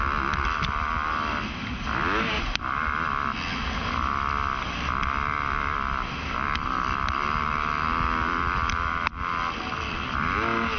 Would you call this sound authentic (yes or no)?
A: yes